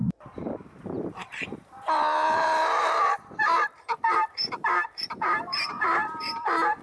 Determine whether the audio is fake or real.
fake